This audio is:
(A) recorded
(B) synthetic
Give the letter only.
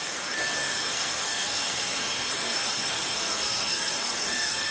B